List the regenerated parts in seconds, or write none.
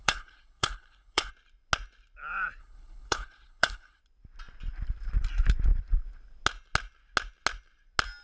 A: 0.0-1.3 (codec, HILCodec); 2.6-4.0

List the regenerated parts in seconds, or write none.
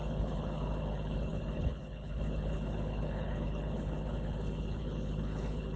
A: 0.0-5.8 (codec, HILCodec)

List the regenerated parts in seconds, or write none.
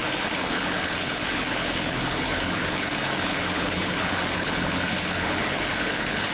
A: 0.0-6.3 (codec, HILCodec)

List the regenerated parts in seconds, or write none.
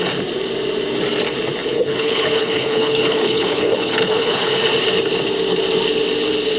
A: 1.6-4.6 (codec, HILCodec)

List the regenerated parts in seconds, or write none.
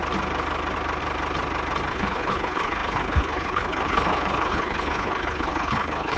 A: 1.9-6.2 (codec, HILCodec)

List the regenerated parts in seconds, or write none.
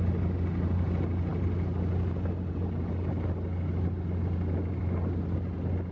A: none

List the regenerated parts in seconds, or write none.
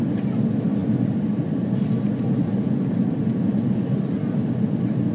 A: none